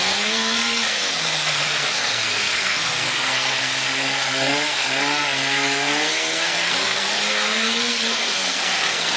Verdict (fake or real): fake